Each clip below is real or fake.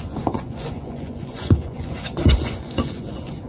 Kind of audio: fake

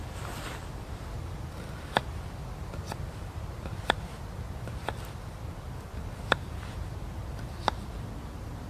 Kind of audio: fake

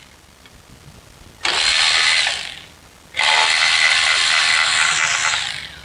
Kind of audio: real